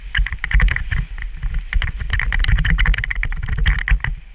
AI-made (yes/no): no